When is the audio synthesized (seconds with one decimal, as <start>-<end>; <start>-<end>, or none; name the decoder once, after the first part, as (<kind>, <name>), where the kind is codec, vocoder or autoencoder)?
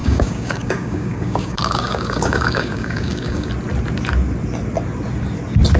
0.0-3.5 (codec, DAC)